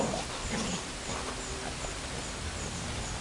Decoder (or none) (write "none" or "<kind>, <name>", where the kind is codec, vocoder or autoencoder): none